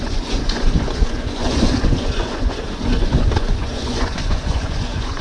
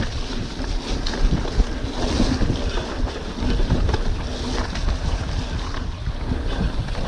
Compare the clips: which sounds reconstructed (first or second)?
first